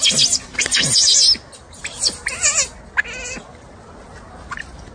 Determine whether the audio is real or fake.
real